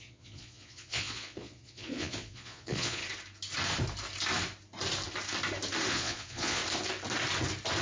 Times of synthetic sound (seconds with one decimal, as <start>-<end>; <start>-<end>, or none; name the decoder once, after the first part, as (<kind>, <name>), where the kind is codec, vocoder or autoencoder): 0.0-3.0 (vocoder, Vocos); 5.9-6.6